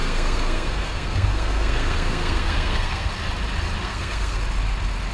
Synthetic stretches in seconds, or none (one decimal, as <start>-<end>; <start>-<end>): 0.0-3.1; 3.8-4.4